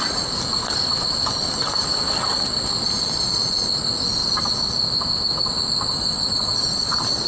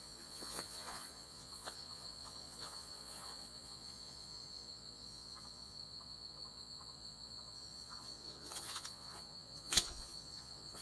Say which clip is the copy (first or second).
second